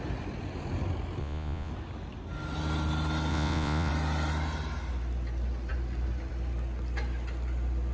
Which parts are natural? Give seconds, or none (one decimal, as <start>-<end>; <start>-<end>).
0.0-1.2; 1.7-3.3; 3.9-7.9